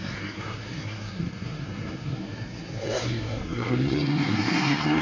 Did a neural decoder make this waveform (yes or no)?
yes